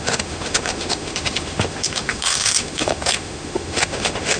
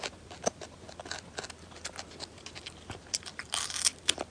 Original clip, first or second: second